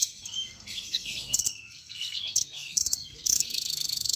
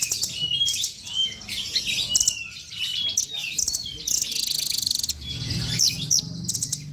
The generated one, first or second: first